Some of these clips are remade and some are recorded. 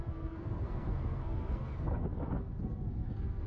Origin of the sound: remade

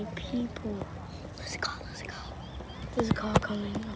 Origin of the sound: recorded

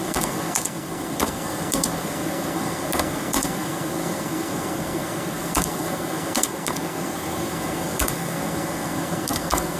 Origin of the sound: remade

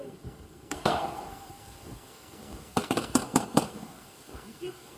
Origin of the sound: remade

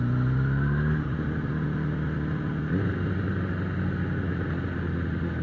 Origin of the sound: recorded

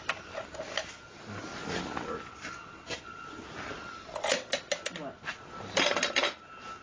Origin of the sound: recorded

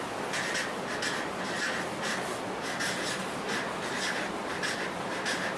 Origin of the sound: recorded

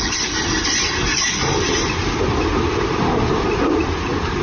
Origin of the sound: recorded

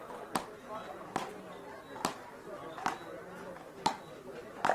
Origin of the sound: recorded